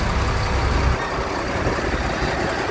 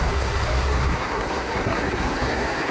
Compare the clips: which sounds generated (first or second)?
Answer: second